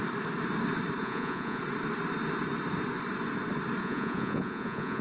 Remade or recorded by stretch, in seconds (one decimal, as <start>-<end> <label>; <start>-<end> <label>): 0.0-1.0 recorded; 1.0-1.6 remade; 1.6-3.8 recorded; 3.8-5.0 remade